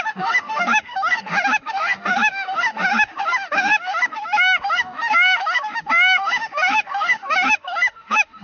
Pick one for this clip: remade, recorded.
remade